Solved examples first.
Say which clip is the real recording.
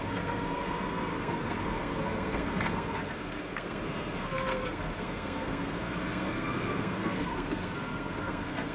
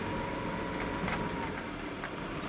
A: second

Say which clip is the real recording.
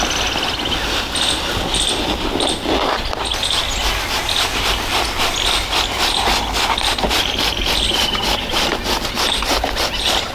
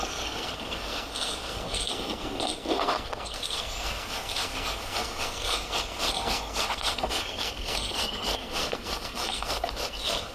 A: first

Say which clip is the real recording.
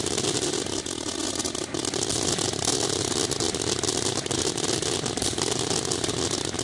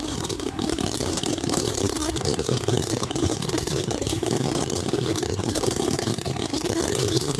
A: first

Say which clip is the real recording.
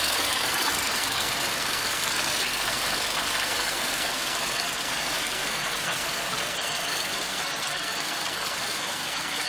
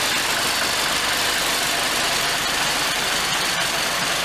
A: second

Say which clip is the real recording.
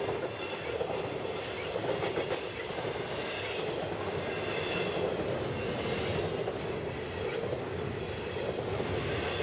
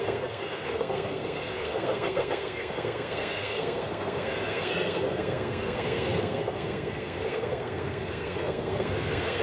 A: first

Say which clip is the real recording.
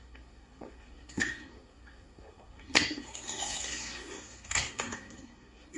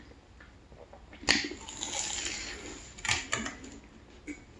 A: second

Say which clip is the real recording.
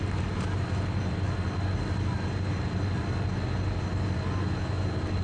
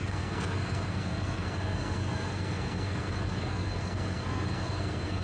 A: first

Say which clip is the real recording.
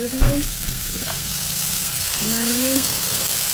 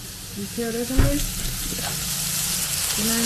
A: second